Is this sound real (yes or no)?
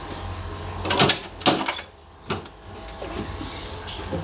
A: yes